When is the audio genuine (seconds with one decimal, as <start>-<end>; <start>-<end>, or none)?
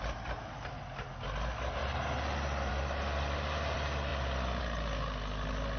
0.0-5.8